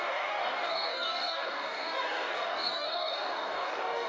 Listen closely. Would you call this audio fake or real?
fake